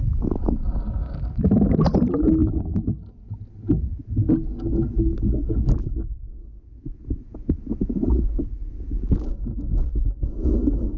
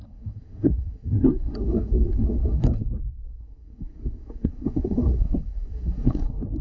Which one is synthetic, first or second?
second